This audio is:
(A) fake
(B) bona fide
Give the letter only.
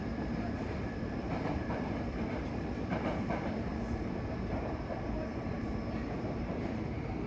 A